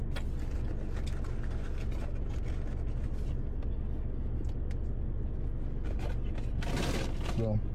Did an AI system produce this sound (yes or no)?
no